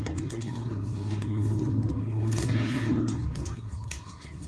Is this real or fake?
fake